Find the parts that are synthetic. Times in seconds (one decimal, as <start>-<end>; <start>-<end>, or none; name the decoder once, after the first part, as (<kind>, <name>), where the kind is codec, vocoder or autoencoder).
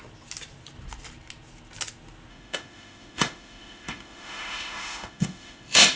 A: 2.3-6.0 (autoencoder, DAC-VAE)